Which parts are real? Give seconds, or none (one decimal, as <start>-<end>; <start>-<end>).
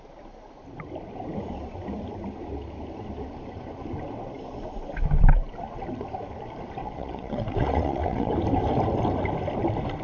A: 0.0-6.8; 8.3-10.0